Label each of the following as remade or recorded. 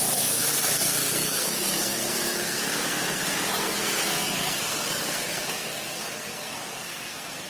remade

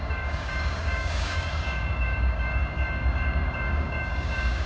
remade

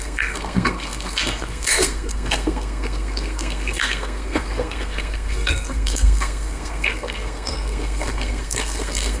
remade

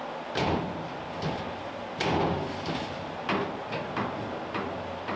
recorded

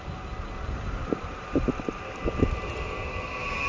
recorded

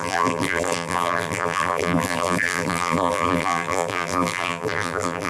remade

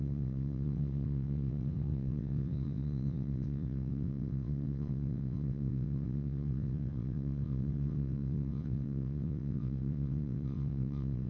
remade